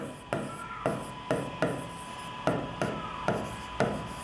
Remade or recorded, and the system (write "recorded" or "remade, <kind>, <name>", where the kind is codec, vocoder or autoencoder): recorded